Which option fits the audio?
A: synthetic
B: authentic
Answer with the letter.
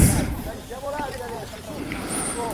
A